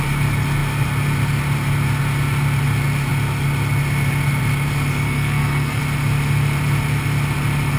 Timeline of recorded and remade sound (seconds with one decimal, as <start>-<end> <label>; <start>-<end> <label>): 0.0-4.9 recorded; 4.9-5.8 remade; 5.8-7.8 recorded